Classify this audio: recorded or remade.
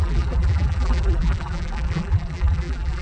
remade